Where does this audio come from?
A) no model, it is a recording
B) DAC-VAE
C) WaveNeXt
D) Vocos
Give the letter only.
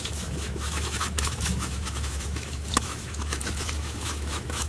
B